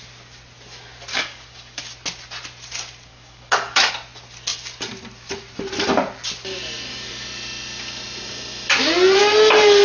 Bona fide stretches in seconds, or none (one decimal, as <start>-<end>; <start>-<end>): 0.0-1.1; 1.8-3.1; 3.9-9.8